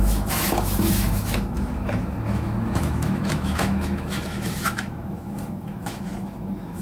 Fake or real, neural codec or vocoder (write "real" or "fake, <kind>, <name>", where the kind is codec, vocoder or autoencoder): fake, autoencoder, DAC-VAE